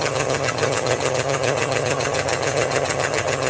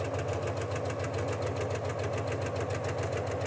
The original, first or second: second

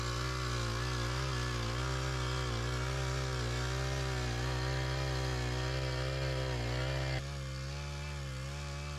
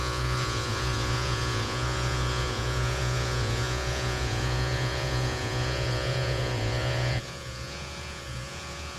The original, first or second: first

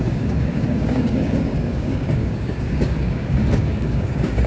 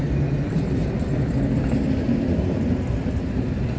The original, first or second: second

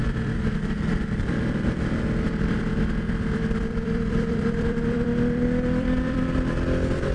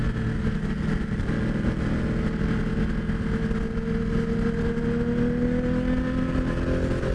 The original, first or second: second